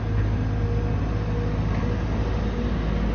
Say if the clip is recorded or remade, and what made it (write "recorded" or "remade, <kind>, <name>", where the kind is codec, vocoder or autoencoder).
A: recorded